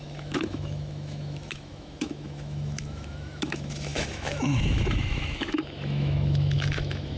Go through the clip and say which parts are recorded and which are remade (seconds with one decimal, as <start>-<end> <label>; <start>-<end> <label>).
0.0-7.2 remade